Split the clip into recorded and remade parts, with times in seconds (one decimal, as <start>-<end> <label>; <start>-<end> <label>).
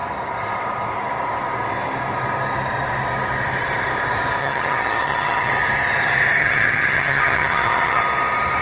0.0-4.4 recorded; 4.4-5.5 remade; 5.5-6.4 recorded; 6.4-8.0 remade; 8.0-8.6 recorded